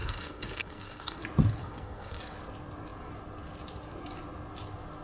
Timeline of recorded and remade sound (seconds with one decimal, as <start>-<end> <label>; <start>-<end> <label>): 0.0-1.2 remade; 1.2-1.6 recorded; 1.6-2.2 remade; 2.2-5.0 recorded

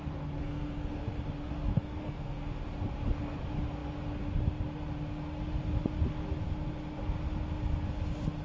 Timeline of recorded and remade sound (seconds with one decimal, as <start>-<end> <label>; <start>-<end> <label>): 0.0-0.4 recorded; 0.4-1.0 remade; 1.0-1.7 recorded; 1.7-2.5 remade; 2.5-8.4 recorded

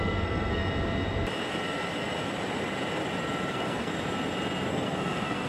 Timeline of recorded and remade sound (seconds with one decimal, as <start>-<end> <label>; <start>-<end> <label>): 0.0-0.6 remade; 0.6-3.5 recorded; 3.5-3.9 remade; 3.9-4.7 recorded; 4.7-5.5 remade

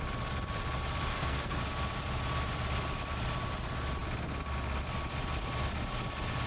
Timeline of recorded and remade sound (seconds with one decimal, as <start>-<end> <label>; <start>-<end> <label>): 0.0-1.1 recorded; 1.1-1.6 remade; 1.6-6.5 recorded

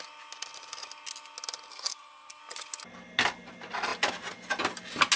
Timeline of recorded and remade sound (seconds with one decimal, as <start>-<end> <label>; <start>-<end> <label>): 0.0-1.7 recorded; 1.7-2.4 remade; 2.4-5.2 recorded